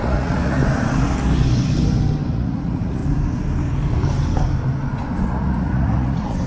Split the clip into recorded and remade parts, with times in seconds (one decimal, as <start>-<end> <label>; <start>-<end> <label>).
0.0-0.6 remade; 0.6-2.3 recorded; 2.3-3.0 remade; 3.0-5.1 recorded; 5.1-6.5 remade